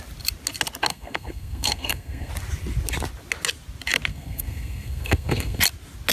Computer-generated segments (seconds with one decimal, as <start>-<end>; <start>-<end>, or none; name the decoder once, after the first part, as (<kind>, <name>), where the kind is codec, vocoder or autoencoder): 0.9-2.3 (codec, SNAC); 4.1-5.6